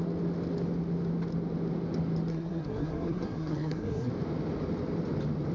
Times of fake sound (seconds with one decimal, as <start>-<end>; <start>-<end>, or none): 2.3-4.1